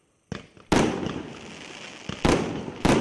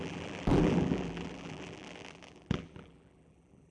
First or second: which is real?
first